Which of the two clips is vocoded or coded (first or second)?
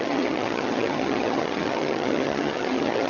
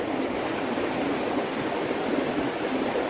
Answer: first